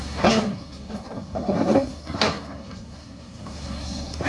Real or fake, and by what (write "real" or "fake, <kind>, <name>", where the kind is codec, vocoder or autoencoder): fake, codec, SNAC